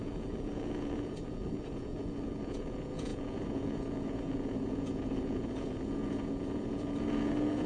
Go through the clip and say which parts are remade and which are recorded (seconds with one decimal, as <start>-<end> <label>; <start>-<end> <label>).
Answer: 0.0-7.7 remade